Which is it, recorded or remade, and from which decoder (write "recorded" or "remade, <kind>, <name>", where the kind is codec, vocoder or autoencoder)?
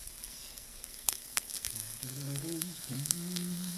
remade, codec, SNAC